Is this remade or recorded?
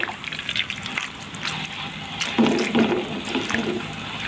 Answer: recorded